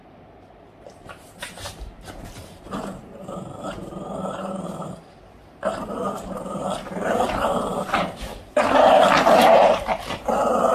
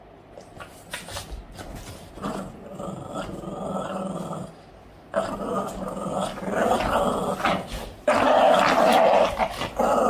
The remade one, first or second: first